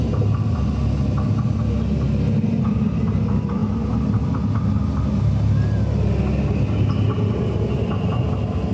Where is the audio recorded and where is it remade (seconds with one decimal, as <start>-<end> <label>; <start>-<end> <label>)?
0.0-8.7 recorded